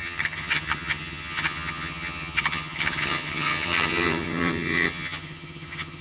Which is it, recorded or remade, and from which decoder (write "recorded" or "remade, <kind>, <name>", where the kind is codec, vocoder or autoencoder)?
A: remade, vocoder, HiFi-GAN